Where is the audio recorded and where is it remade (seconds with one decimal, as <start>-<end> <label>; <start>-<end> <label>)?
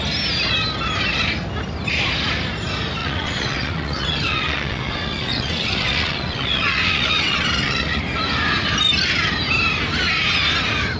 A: 0.0-3.0 recorded; 3.0-8.0 remade; 8.0-11.0 recorded